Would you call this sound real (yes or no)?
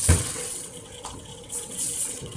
no